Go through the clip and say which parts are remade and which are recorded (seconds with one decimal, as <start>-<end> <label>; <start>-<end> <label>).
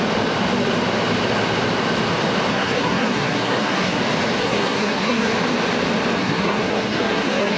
0.0-2.5 recorded; 2.5-4.0 remade; 4.0-4.4 recorded; 4.4-5.3 remade; 5.3-6.2 recorded; 6.2-7.6 remade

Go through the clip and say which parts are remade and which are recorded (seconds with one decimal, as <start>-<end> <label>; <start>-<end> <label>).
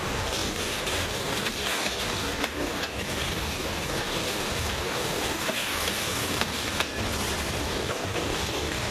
0.0-6.9 remade; 6.9-7.6 recorded; 7.6-8.9 remade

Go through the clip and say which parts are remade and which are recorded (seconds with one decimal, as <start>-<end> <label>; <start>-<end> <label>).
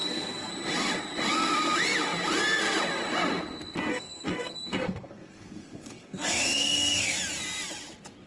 0.0-0.5 remade; 0.5-3.9 recorded; 3.9-7.2 remade; 7.2-8.3 recorded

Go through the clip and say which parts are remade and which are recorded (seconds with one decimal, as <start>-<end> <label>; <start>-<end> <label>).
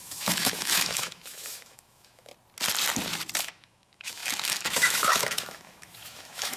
0.0-2.3 remade; 2.3-3.4 recorded; 3.4-6.6 remade